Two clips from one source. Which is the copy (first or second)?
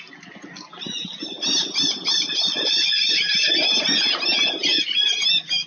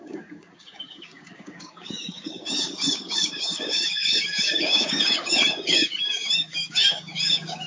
second